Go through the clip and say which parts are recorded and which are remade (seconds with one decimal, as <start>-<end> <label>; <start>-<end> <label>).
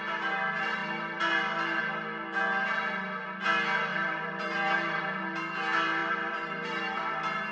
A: 0.0-0.8 recorded; 0.8-1.8 remade; 1.8-3.9 recorded; 3.9-5.0 remade; 5.0-6.0 recorded; 6.0-7.0 remade; 7.0-7.5 recorded